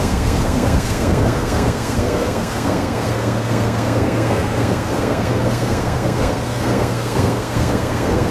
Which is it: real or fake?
fake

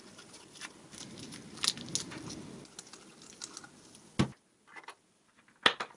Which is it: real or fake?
real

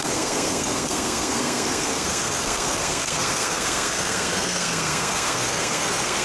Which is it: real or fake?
fake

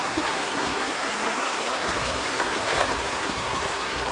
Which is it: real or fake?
fake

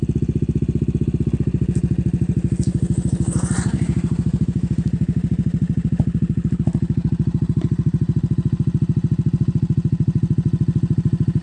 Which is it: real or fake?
real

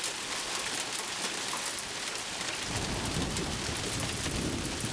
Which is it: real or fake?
real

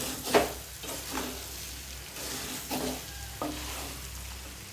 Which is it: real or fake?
real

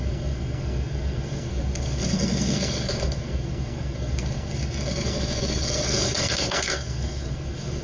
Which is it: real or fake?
fake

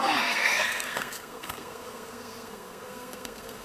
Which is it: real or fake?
fake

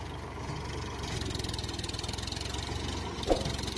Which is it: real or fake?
real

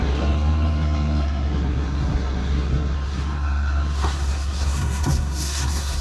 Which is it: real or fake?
fake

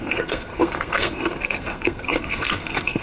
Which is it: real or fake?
fake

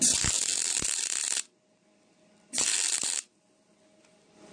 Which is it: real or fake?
real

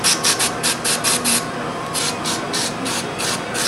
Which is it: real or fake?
real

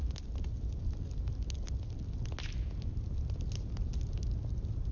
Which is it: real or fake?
real